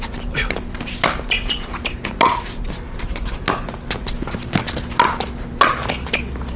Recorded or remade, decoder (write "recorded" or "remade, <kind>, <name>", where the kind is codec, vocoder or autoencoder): recorded